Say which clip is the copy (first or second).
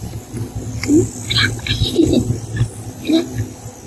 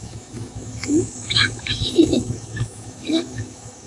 second